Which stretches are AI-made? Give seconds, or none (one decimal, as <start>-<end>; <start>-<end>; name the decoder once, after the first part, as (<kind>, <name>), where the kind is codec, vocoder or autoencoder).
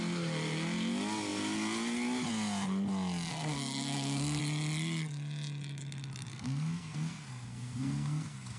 3.3-4.4 (codec, SNAC); 6.3-8.6